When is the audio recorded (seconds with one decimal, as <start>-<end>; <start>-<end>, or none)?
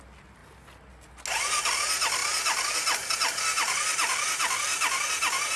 0.0-5.6